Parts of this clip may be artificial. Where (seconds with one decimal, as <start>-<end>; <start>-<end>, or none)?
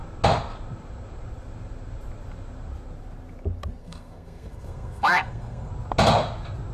3.8-5.7